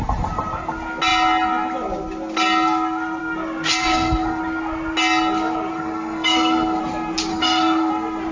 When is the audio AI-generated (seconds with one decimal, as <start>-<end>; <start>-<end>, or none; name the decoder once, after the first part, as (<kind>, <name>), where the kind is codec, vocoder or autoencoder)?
3.8-4.4 (codec, SNAC); 5.7-6.8; 7.3-7.9